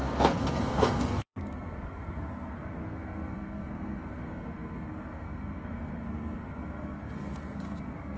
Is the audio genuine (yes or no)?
no